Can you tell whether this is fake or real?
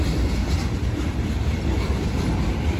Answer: real